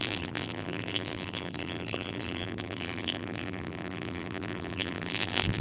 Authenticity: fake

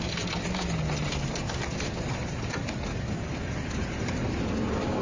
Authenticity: real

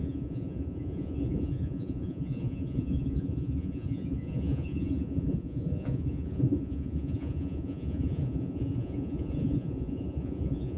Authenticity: fake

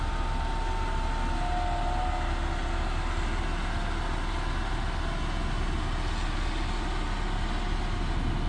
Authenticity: real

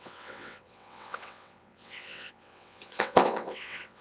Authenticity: fake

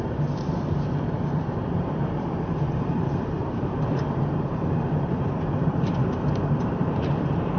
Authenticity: fake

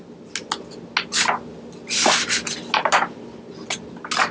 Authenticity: real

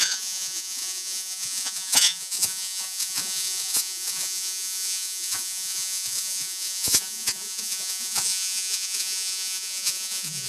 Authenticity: fake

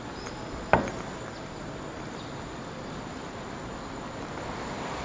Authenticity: real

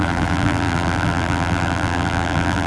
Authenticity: fake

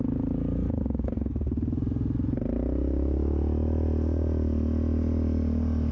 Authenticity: real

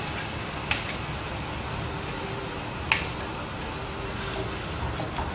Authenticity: real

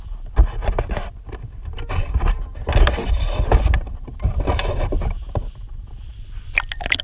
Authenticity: real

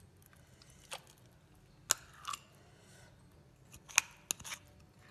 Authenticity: real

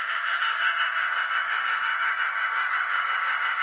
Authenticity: fake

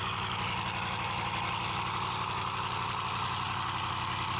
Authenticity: real